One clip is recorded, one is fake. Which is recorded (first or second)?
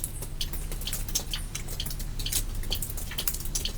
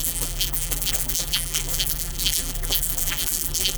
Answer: first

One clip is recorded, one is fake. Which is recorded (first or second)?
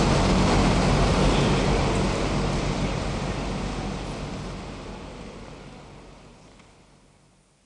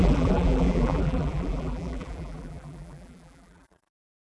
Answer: first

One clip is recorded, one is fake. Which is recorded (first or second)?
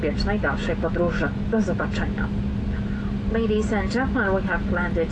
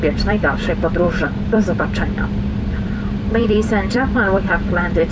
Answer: first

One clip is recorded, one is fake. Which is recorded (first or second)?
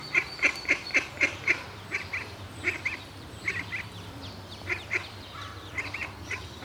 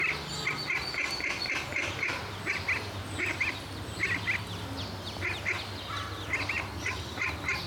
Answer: second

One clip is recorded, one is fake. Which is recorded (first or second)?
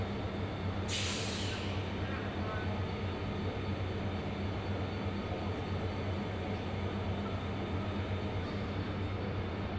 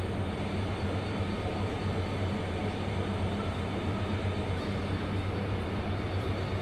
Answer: first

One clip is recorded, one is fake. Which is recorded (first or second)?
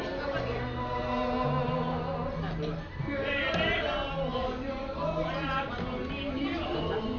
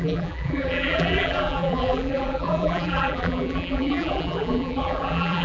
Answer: first